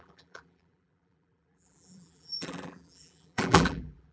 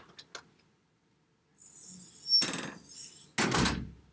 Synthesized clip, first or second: first